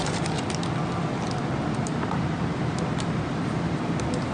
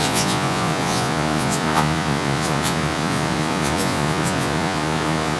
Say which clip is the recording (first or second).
first